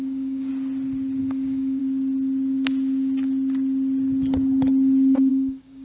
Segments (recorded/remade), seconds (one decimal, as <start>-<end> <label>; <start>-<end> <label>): 0.0-0.5 remade; 0.5-1.2 recorded; 1.2-1.8 remade; 1.8-5.3 recorded; 5.3-5.8 remade